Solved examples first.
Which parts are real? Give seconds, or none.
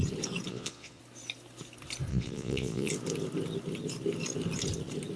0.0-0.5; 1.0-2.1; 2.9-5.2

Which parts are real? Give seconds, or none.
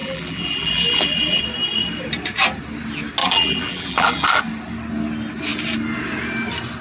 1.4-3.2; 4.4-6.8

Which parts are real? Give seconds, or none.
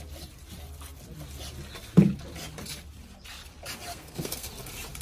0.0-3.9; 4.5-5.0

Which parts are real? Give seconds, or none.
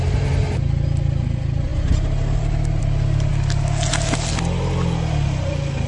0.0-5.9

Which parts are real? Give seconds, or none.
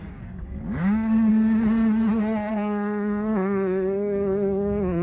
1.3-2.5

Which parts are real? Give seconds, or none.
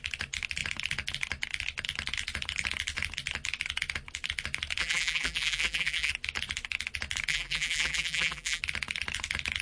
0.0-4.8; 6.1-7.3; 8.6-9.6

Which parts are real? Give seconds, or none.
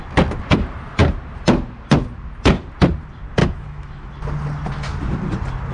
0.0-3.4; 4.1-5.7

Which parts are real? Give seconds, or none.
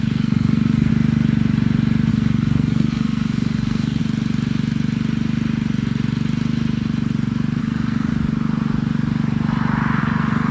0.9-2.1; 4.0-7.6; 8.1-10.0